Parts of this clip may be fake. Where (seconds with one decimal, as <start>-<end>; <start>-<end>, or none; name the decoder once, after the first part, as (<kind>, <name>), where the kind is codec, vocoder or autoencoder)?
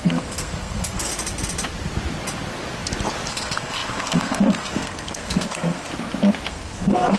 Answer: 0.0-1.1 (codec, SNAC); 3.3-5.9; 6.5-7.2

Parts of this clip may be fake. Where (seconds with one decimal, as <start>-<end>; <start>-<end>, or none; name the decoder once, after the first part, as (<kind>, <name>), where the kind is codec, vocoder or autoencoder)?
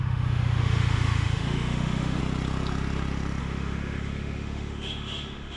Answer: 0.0-2.2 (autoencoder, DAC-VAE); 3.4-5.6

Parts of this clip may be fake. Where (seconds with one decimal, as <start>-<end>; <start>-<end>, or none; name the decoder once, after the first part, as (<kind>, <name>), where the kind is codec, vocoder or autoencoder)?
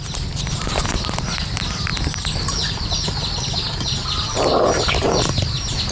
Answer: none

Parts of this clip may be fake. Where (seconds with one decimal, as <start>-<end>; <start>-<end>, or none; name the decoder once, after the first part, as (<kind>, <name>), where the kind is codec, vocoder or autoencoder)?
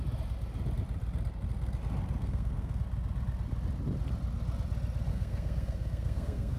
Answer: 2.2-2.8 (codec, SNAC); 5.1-6.6